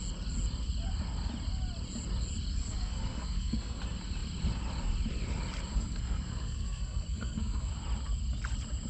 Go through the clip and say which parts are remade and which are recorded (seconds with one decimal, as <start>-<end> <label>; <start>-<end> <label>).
0.0-2.6 recorded; 2.6-3.8 remade; 3.8-5.7 recorded; 5.7-7.7 remade; 7.7-8.9 recorded